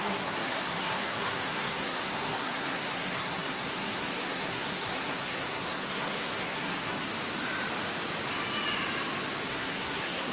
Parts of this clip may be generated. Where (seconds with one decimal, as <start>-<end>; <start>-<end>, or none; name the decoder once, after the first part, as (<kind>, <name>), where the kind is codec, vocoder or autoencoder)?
0.0-7.1 (codec, SNAC); 9.5-10.3